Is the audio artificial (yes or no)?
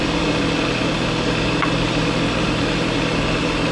no